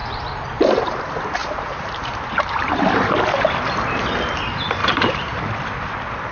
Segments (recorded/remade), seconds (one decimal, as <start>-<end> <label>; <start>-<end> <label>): 0.0-1.0 remade; 1.0-1.4 recorded; 1.4-2.8 remade; 2.8-4.8 recorded; 4.8-5.4 remade; 5.4-6.3 recorded